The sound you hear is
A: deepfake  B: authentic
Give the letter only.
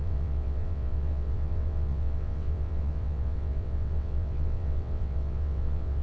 A